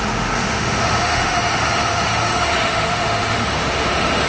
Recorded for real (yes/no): no